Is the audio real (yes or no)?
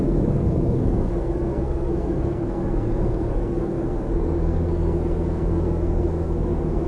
no